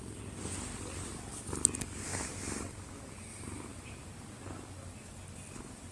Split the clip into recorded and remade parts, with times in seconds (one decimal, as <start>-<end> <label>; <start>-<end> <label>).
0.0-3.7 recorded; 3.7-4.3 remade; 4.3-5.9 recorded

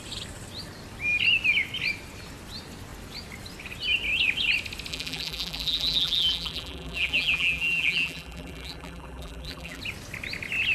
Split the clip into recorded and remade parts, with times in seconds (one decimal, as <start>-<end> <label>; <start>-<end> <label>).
0.0-4.9 recorded; 4.9-9.8 remade; 9.8-10.7 recorded

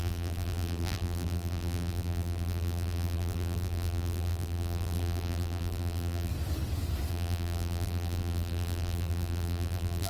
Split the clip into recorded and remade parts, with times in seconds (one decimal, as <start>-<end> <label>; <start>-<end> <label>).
0.0-6.3 remade; 6.3-7.1 recorded; 7.1-10.1 remade

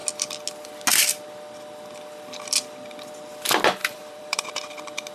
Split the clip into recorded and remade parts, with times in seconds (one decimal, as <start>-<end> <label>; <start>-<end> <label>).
0.0-3.8 recorded; 3.8-4.5 remade; 4.5-5.1 recorded